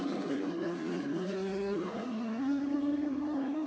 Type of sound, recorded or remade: remade